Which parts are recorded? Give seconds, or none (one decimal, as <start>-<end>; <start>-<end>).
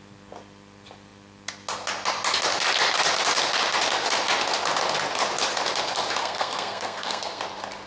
0.0-6.2; 7.4-7.9